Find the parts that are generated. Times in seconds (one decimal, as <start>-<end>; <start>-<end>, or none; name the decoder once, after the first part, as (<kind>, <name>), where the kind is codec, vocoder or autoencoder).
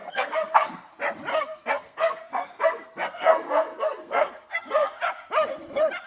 0.0-0.9 (codec, SNAC); 1.3-5.0